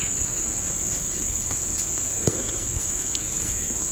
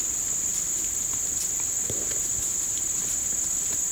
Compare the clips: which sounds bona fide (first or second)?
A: second